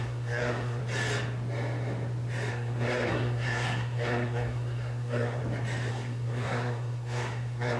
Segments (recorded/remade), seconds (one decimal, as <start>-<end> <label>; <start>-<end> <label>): 0.0-0.8 remade; 0.8-2.5 recorded; 2.5-5.4 remade; 5.4-5.9 recorded; 5.9-7.8 remade